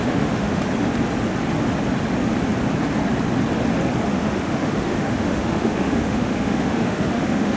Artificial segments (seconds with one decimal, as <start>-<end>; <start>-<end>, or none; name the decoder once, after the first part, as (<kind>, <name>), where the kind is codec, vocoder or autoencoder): 0.0-0.6 (autoencoder, DAC-VAE); 4.1-7.6